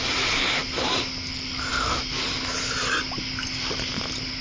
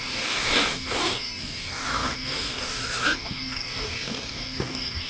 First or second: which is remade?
second